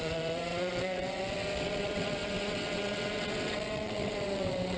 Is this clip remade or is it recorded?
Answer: remade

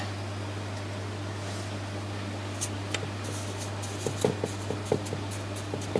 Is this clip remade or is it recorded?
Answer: recorded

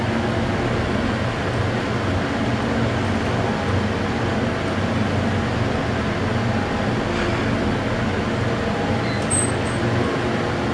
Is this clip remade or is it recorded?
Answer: recorded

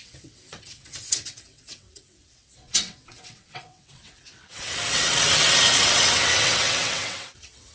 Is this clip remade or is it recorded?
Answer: remade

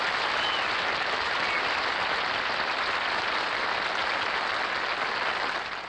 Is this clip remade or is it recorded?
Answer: recorded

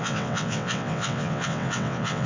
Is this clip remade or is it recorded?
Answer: remade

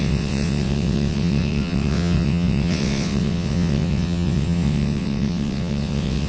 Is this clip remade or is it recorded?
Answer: remade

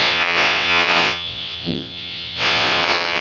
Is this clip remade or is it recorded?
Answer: remade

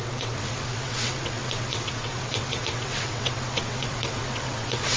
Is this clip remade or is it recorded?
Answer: remade